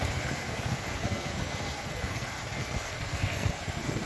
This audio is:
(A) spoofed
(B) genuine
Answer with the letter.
A